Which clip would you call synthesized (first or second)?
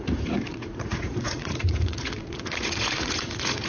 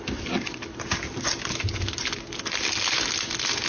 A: first